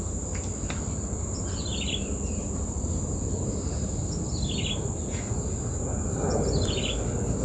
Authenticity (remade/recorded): recorded